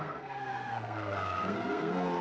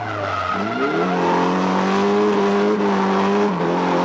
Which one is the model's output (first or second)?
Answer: first